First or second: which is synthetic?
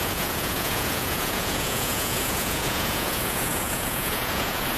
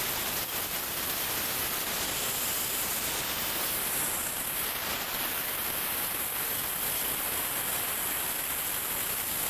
first